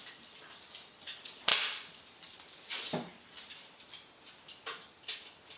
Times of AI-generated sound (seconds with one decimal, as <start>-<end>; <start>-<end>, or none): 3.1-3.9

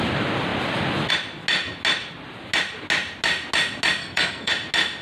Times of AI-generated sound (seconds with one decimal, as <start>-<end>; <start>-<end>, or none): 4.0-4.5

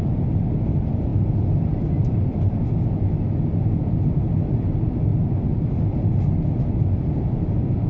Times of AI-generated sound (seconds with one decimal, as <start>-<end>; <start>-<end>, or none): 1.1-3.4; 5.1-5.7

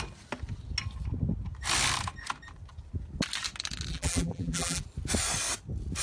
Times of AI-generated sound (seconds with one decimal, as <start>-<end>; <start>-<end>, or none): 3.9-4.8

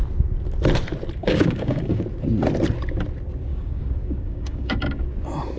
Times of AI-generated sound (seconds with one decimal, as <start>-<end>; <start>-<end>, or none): 1.2-2.0; 3.5-5.0

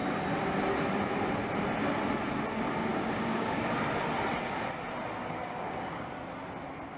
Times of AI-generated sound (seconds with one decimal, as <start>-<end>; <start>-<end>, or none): 2.9-3.7; 5.2-6.1

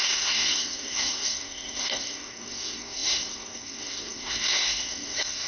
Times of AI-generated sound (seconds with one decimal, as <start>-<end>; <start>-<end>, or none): 0.0-5.5

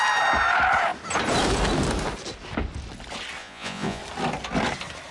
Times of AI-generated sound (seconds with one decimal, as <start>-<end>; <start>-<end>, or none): 3.4-4.0